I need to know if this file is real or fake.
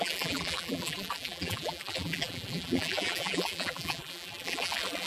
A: fake